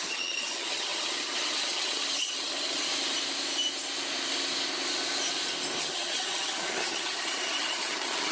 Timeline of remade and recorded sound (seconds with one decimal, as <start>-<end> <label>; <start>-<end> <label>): 0.0-2.9 remade; 2.9-5.8 recorded; 5.8-8.3 remade